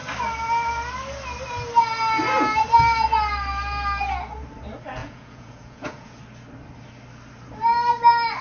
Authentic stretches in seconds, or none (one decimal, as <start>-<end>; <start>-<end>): 0.0-5.0; 6.2-8.4